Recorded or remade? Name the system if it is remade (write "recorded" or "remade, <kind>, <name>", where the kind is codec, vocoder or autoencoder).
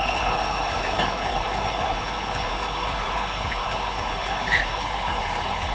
remade, codec, HILCodec